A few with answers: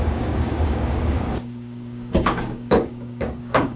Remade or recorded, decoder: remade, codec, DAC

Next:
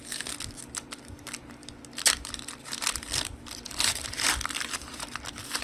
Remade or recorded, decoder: recorded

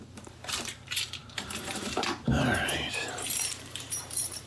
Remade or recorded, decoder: remade, vocoder, BigVGAN v2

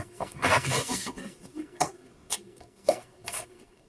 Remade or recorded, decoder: remade, codec, SNAC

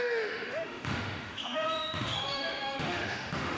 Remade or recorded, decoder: remade, autoencoder, DAC-VAE